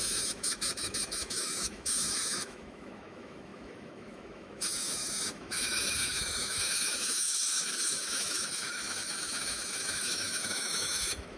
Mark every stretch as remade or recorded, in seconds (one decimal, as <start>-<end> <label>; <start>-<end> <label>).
0.0-11.4 remade